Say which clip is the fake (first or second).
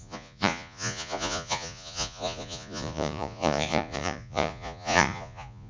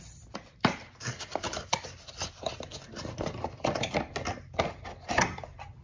first